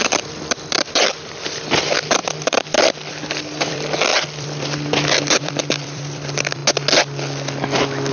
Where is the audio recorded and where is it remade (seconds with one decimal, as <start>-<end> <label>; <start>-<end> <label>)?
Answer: 0.0-6.6 remade; 6.6-8.1 recorded

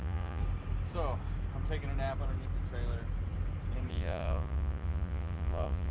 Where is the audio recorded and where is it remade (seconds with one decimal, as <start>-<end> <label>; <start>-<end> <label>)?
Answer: 0.0-0.4 remade; 0.4-3.9 recorded; 3.9-5.9 remade

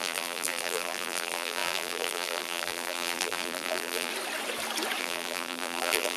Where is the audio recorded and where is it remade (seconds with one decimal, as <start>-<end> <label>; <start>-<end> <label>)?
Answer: 0.0-4.1 remade; 4.1-5.0 recorded; 5.0-6.2 remade

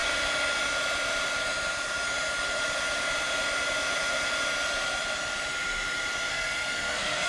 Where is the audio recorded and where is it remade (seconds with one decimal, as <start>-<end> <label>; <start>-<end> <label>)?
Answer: 0.0-6.3 recorded; 6.3-7.3 remade

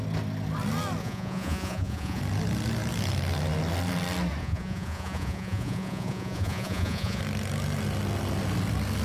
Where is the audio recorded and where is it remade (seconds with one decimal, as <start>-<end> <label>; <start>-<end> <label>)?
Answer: 0.0-1.0 recorded; 1.0-2.2 remade; 2.2-4.4 recorded; 4.4-7.2 remade; 7.2-9.0 recorded

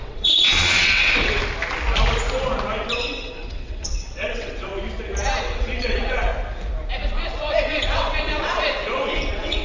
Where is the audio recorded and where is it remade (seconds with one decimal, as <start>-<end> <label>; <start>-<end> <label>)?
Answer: 0.0-1.4 remade; 1.4-3.0 recorded; 3.0-4.7 remade; 4.7-5.4 recorded; 5.4-6.3 remade; 6.3-7.1 recorded; 7.1-9.6 remade

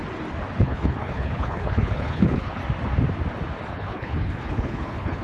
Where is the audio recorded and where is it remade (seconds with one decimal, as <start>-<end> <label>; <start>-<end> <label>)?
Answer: 0.0-0.6 recorded; 0.6-2.6 remade; 2.6-3.7 recorded; 3.7-5.2 remade

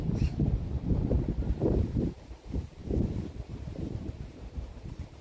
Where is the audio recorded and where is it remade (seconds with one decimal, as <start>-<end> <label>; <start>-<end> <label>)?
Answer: 0.0-2.8 remade; 2.8-3.5 recorded; 3.5-5.2 remade